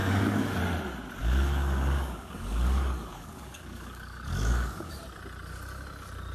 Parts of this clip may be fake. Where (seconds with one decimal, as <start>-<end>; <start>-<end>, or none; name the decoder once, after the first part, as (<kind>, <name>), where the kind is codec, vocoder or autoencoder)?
0.0-0.6 (codec, DAC); 1.2-5.0